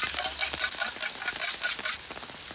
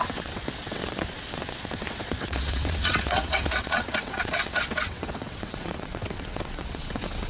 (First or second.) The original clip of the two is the first